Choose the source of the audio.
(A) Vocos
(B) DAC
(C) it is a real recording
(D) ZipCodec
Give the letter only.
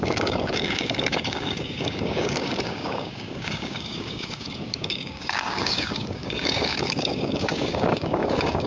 B